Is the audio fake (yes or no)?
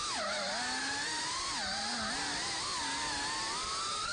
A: no